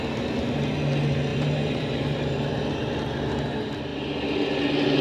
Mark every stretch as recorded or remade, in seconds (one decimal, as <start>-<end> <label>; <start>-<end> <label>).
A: 0.0-1.3 recorded; 1.3-2.6 remade; 2.6-5.0 recorded

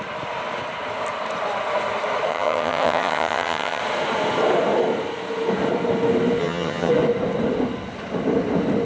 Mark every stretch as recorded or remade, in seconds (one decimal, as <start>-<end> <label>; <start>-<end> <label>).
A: 0.0-2.3 recorded; 2.3-3.8 remade; 3.8-6.4 recorded; 6.4-6.9 remade; 6.9-8.8 recorded

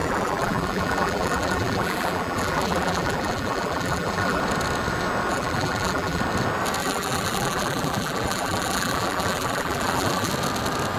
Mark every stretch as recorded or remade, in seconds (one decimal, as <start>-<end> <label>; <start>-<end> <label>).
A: 0.0-4.4 remade; 4.4-5.3 recorded; 5.3-6.2 remade; 6.2-6.8 recorded; 6.8-10.3 remade; 10.3-11.0 recorded

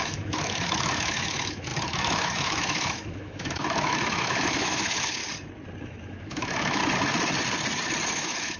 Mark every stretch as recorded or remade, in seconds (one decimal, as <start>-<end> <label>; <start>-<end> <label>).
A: 0.0-5.2 remade; 5.2-5.8 recorded; 5.8-6.8 remade; 6.8-8.1 recorded; 8.1-8.6 remade

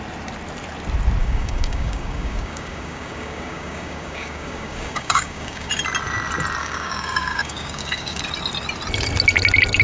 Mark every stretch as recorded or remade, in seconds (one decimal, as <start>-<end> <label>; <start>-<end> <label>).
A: 0.0-1.2 recorded; 1.2-5.7 remade; 5.7-6.6 recorded; 6.6-8.2 remade; 8.2-9.8 recorded